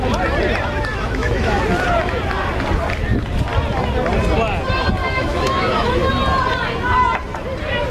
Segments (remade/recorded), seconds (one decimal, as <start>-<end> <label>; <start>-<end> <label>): 0.0-0.9 recorded; 0.9-1.6 remade; 1.6-5.0 recorded; 5.0-6.1 remade; 6.1-7.9 recorded